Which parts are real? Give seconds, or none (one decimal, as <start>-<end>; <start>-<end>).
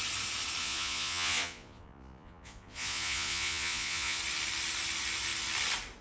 0.0-0.6; 4.2-6.0